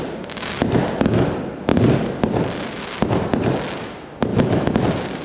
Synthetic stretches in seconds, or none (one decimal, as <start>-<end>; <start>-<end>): 4.3-4.8